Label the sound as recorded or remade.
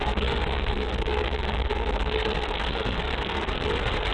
remade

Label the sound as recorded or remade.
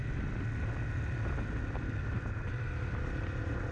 recorded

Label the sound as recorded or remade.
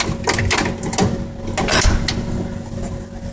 recorded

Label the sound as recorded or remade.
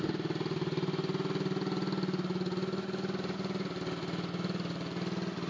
recorded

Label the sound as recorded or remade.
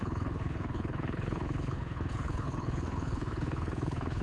remade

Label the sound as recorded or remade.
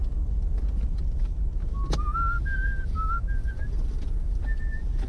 recorded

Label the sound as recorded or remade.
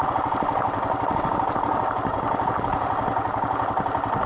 recorded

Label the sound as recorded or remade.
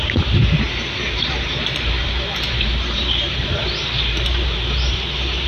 remade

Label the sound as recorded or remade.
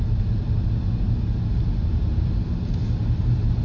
recorded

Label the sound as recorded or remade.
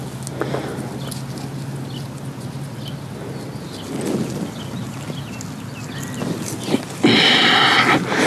recorded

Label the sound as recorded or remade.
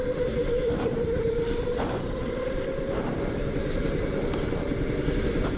remade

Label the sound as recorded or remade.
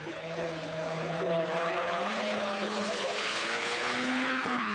remade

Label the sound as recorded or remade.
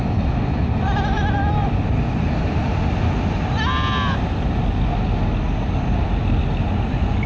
recorded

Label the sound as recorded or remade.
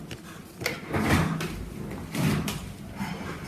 recorded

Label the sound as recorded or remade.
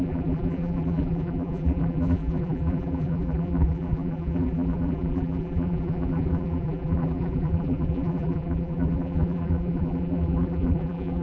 remade